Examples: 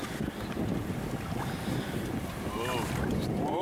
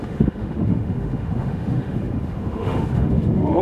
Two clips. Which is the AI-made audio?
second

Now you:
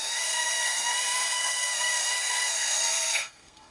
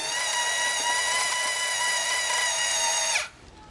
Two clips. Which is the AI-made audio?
first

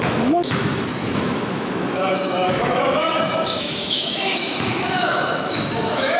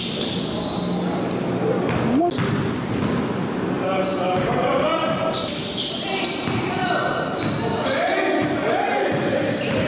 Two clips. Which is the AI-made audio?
first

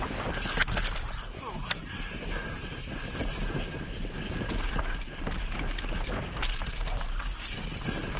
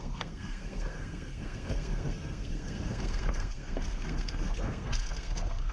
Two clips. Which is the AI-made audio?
second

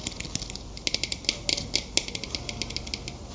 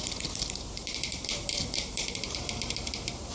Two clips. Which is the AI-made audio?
second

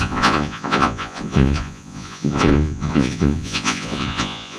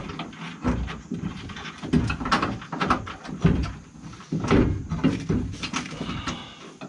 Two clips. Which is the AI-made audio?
first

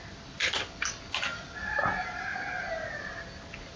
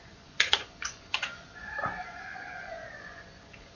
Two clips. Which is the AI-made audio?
second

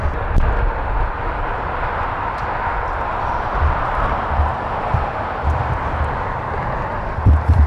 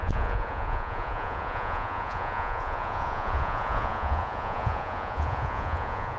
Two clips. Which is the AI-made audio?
second